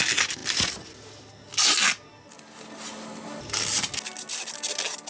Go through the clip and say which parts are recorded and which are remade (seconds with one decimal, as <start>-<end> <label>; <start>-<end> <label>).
0.0-5.1 recorded